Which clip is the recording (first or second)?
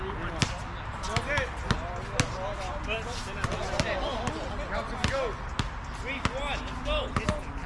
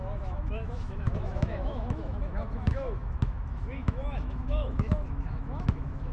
first